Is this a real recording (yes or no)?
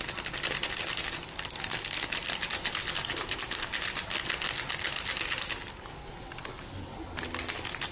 yes